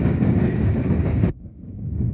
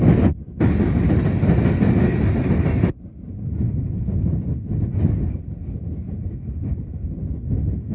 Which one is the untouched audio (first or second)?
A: second